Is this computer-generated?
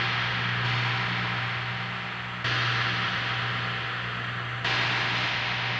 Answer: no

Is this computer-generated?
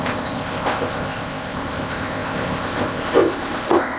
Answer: yes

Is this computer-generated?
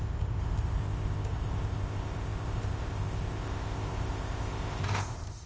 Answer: yes